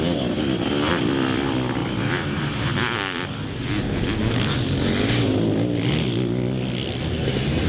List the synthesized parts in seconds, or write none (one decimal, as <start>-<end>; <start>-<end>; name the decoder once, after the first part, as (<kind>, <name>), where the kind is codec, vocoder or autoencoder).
1.8-2.7 (vocoder, BigVGAN v2)